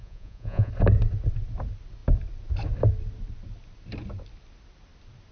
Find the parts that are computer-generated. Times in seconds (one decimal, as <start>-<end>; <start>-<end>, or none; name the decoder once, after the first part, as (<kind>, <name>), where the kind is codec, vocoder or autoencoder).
0.0-0.7 (vocoder, Vocos)

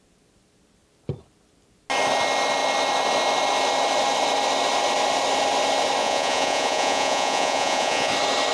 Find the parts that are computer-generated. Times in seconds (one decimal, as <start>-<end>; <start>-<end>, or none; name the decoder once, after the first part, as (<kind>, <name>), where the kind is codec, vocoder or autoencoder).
6.0-8.1 (vocoder, Vocos)